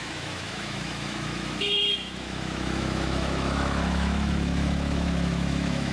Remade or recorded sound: remade